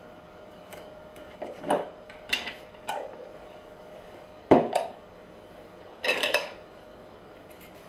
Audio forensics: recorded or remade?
remade